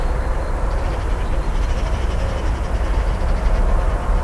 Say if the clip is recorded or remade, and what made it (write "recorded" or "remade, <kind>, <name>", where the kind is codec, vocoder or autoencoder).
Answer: recorded